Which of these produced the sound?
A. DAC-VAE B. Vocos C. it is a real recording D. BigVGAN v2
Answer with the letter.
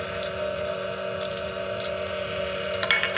C